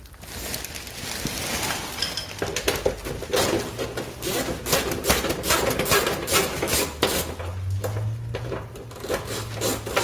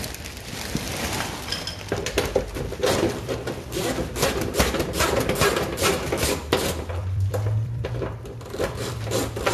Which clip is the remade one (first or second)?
second